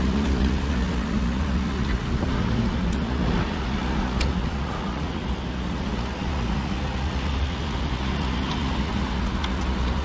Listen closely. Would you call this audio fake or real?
fake